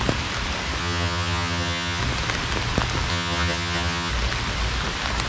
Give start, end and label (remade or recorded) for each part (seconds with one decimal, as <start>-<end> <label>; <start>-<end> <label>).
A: 0.0-0.8 recorded; 0.8-2.0 remade; 2.0-3.1 recorded; 3.1-4.1 remade; 4.1-5.3 recorded